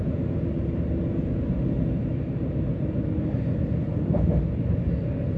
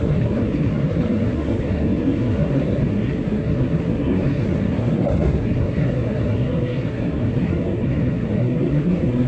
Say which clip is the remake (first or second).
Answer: second